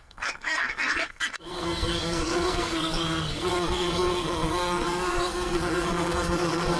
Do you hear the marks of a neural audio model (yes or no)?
yes